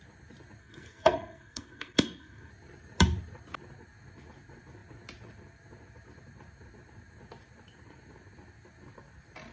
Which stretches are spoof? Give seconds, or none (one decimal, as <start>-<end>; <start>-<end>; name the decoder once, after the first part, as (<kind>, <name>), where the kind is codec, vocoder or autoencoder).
0.6-2.5 (codec, SNAC)

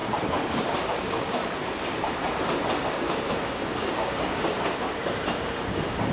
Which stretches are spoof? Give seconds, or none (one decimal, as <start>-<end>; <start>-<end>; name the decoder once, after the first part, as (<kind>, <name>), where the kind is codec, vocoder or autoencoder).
0.6-1.4 (codec, DAC); 3.3-6.1